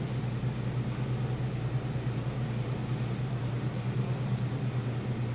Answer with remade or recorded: recorded